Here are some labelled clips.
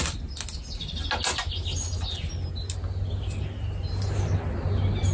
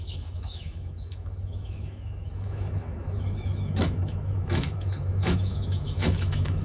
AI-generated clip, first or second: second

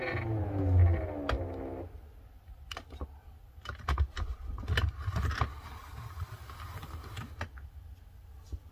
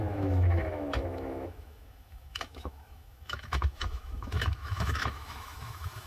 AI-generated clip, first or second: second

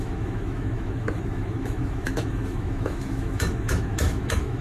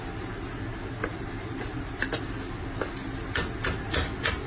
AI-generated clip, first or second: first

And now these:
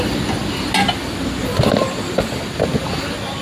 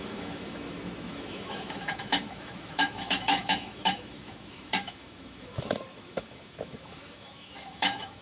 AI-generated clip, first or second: second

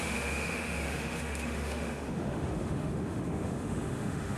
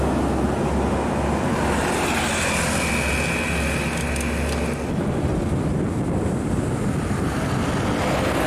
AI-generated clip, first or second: first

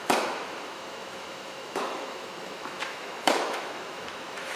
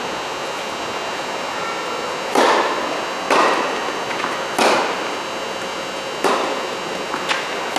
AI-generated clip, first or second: first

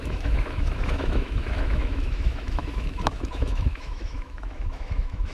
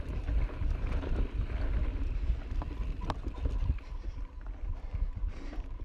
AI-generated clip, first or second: first